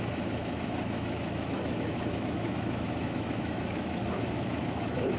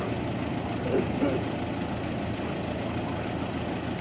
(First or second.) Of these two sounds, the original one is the second